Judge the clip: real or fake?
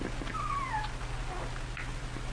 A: real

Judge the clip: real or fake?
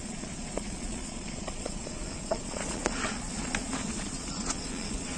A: fake